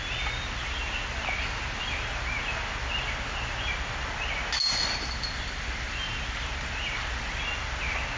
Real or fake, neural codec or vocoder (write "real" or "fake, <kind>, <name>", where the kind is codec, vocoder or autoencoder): real